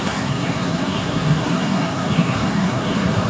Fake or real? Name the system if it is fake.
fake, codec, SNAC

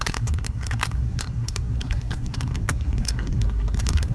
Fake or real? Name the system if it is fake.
fake, codec, SNAC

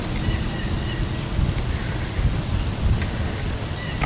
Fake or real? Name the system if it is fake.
real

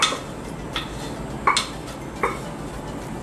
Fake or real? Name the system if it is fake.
real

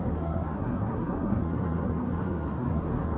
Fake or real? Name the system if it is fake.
fake, codec, SNAC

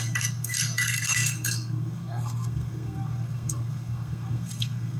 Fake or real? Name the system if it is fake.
fake, codec, SNAC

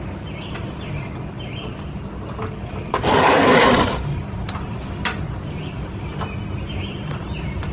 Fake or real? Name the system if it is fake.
real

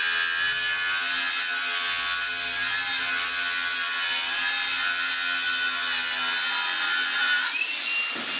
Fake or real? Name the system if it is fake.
real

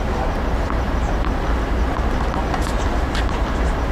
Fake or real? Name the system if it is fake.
real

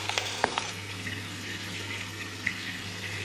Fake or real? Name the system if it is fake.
fake, codec, SNAC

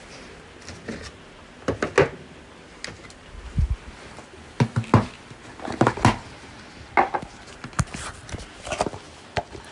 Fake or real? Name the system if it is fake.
real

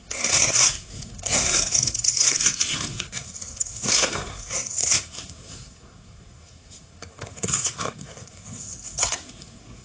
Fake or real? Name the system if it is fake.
fake, codec, SNAC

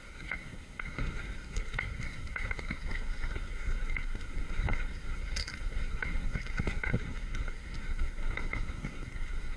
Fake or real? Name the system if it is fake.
fake, codec, SNAC